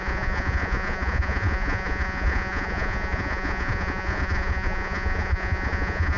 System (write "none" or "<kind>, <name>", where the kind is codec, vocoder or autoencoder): vocoder, Vocos